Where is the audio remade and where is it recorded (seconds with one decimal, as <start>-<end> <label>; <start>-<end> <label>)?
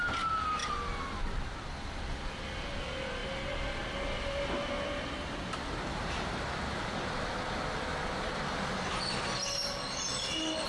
0.0-10.7 recorded